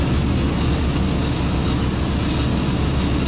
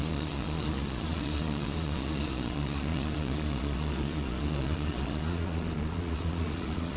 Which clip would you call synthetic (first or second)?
second